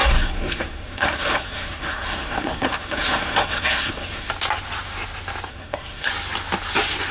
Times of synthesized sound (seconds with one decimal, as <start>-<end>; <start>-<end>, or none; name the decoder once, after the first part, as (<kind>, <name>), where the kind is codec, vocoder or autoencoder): 0.0-4.3 (codec, SNAC); 5.5-6.1